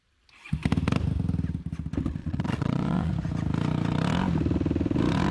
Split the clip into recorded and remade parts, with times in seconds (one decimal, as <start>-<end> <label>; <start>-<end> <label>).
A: 0.0-2.2 recorded; 2.2-3.1 remade; 3.1-5.3 recorded